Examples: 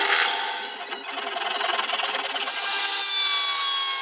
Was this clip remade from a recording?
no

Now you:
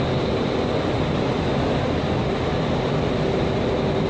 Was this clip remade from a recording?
no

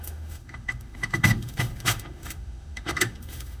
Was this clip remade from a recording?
yes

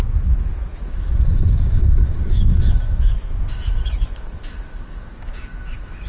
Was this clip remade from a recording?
yes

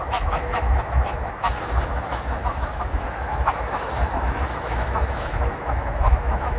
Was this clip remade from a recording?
yes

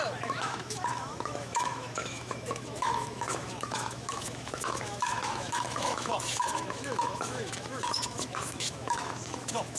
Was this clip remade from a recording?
yes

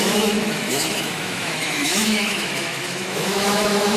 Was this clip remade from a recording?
yes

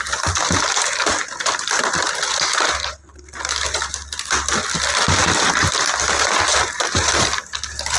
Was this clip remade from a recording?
no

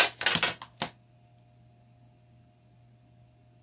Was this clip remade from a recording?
no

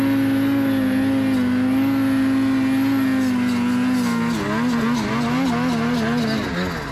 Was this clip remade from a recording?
no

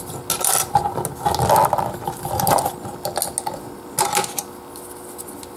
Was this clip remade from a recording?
no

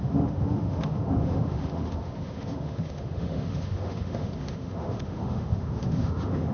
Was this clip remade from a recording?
yes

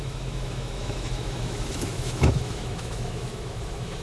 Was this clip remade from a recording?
yes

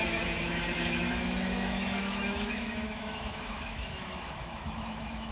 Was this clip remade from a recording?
yes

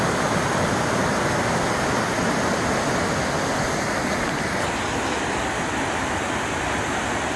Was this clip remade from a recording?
no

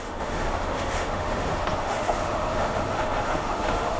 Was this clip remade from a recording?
yes